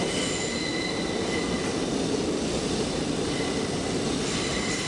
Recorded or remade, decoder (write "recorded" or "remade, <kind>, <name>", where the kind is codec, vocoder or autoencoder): recorded